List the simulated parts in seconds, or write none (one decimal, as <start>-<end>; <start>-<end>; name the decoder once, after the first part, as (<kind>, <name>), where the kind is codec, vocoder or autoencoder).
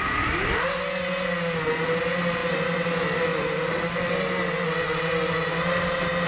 none